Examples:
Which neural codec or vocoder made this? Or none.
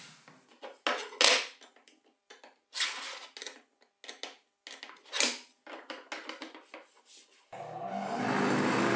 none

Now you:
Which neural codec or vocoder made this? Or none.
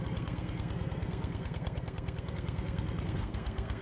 codec, SNAC